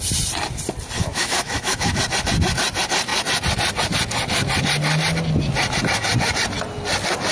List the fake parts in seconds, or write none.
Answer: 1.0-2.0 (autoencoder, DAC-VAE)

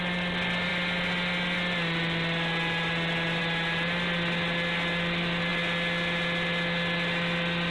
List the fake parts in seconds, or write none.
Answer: none

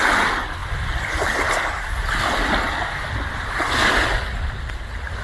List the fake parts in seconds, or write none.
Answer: none

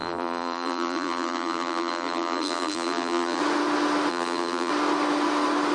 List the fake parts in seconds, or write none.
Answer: 0.0-3.4 (vocoder, BigVGAN v2); 4.1-4.7

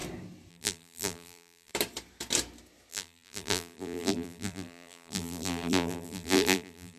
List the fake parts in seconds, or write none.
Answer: 0.5-1.7 (vocoder, BigVGAN v2); 2.9-7.0

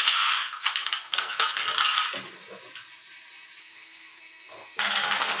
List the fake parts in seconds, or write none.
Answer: 0.0-1.6 (codec, SNAC); 3.6-5.4

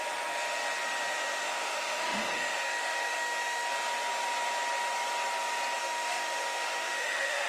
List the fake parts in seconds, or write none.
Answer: 1.4-3.7 (autoencoder, DAC-VAE); 5.8-7.5